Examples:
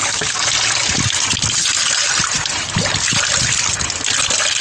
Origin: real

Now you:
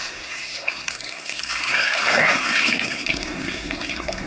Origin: fake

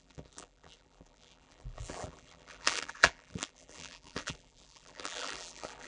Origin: fake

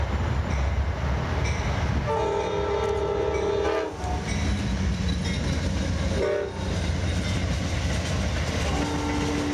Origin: real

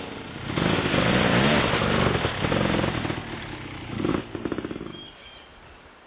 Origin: real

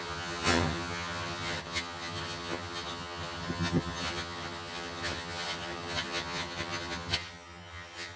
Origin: fake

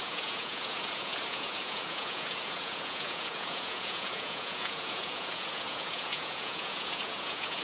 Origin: fake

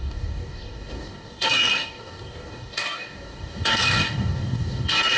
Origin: fake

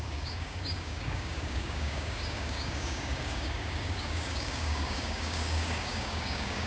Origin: fake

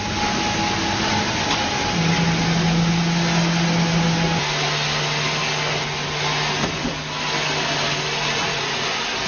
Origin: real